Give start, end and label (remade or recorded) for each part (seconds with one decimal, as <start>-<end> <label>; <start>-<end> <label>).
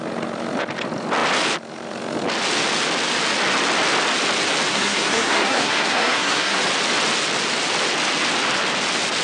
0.0-4.7 recorded; 4.7-6.6 remade; 6.6-9.2 recorded